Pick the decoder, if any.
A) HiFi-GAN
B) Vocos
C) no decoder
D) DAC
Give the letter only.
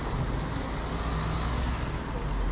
C